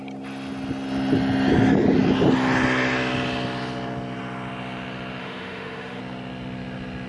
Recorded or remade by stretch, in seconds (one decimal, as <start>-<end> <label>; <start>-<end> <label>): 0.0-5.2 recorded; 5.2-6.0 remade; 6.0-7.1 recorded